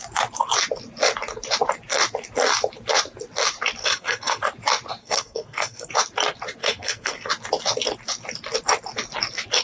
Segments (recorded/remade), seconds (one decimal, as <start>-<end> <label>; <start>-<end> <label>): 0.0-3.8 recorded; 3.8-4.4 remade; 4.4-5.0 recorded; 5.0-5.9 remade; 5.9-6.6 recorded; 6.6-7.3 remade; 7.3-9.6 recorded